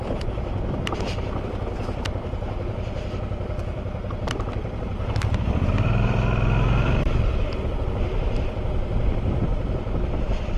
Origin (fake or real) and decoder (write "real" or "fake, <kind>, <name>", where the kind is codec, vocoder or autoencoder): fake, vocoder, BigVGAN v2